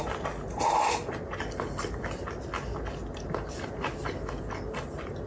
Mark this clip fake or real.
real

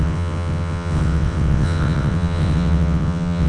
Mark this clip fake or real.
fake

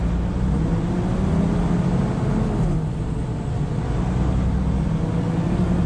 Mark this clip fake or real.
real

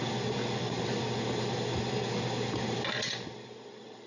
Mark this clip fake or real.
real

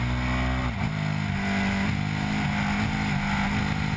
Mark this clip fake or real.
real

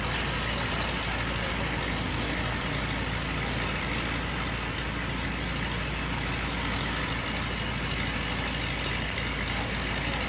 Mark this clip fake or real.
real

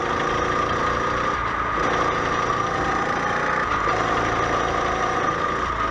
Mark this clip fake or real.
real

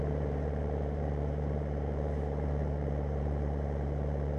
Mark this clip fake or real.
fake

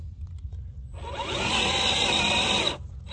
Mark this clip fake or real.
real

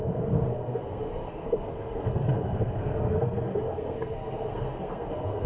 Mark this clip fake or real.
fake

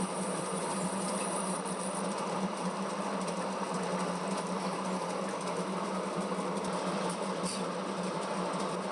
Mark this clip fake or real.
fake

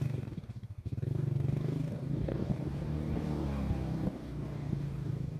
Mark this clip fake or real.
fake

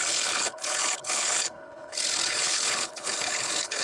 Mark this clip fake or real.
fake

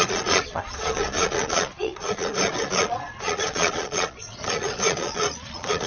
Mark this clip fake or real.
fake